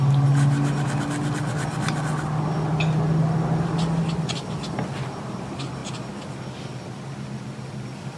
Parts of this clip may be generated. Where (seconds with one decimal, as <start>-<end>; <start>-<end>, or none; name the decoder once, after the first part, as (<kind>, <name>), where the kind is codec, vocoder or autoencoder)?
none